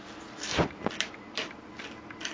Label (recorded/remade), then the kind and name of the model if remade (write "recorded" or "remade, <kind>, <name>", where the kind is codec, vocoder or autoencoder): recorded